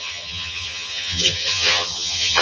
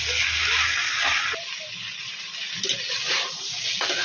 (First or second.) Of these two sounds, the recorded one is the second